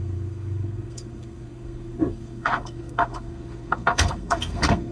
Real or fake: fake